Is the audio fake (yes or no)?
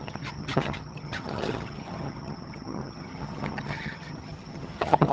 yes